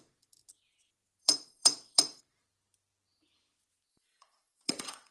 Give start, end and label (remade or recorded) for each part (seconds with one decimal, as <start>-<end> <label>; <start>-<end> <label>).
0.0-1.2 recorded; 1.2-2.2 remade; 2.2-3.9 recorded; 3.9-5.1 remade